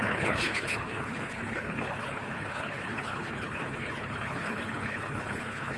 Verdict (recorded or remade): remade